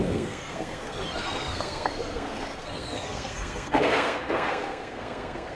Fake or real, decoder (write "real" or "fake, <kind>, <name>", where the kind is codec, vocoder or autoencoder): fake, codec, SNAC